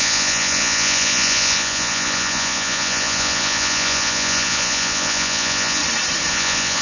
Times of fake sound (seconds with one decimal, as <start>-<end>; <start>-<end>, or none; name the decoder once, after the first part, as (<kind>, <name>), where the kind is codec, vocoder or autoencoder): 0.0-5.8 (vocoder, Vocos); 6.3-6.8